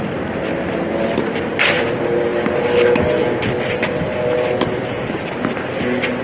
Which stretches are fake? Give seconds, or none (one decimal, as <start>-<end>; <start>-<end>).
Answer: none